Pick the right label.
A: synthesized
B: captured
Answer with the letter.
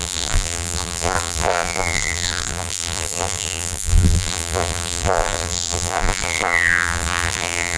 A